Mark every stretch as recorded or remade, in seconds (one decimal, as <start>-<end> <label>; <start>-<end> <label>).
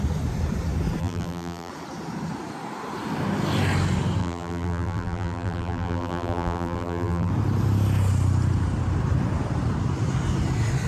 0.0-1.0 recorded; 1.0-1.7 remade; 1.7-4.2 recorded; 4.2-7.3 remade; 7.3-10.9 recorded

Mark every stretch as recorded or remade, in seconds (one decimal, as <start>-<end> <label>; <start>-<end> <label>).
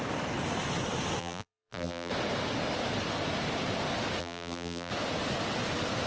0.0-1.2 recorded; 1.2-2.1 remade; 2.1-4.2 recorded; 4.2-4.9 remade; 4.9-6.1 recorded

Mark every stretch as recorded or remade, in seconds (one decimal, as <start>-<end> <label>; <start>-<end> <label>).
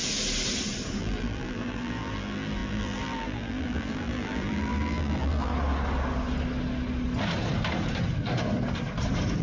0.0-1.0 recorded; 1.0-5.5 remade; 5.5-9.4 recorded